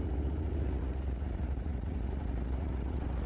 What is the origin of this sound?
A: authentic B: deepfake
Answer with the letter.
B